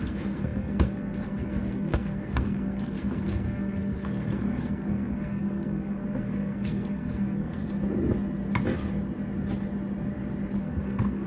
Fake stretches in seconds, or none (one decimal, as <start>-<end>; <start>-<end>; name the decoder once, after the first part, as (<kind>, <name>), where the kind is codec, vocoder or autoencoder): 0.0-7.6 (codec, SNAC); 10.6-11.3